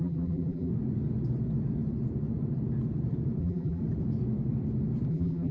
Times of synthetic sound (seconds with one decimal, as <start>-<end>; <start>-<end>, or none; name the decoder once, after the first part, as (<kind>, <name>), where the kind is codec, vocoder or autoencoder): 0.0-0.7 (vocoder, BigVGAN v2); 3.4-3.8; 5.1-5.5